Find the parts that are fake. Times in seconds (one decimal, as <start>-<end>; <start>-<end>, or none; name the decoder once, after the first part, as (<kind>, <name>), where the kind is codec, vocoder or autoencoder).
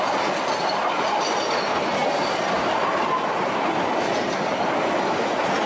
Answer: none